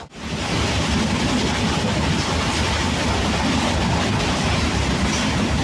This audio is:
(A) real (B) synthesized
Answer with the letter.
A